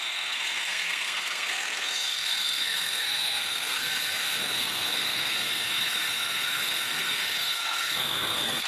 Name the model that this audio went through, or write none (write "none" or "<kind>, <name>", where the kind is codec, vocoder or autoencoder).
codec, SNAC